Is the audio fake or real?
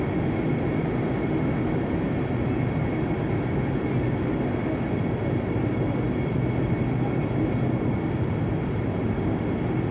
real